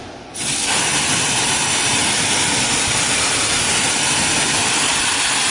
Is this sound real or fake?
real